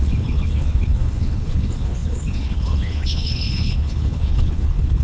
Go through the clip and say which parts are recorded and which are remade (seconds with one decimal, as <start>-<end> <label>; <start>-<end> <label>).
0.0-5.0 remade